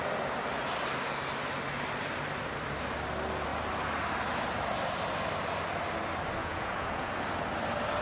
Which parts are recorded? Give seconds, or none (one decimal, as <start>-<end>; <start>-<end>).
0.0-6.4; 7.1-8.0